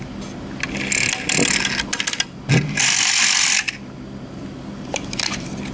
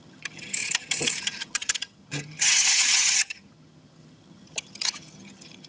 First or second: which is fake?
second